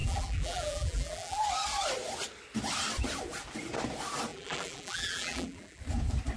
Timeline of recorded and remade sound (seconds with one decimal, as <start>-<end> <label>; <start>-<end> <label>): 0.0-1.4 remade; 1.4-4.3 recorded; 4.3-5.8 remade; 5.8-6.4 recorded